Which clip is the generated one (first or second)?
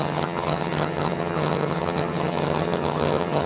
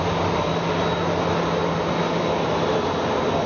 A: first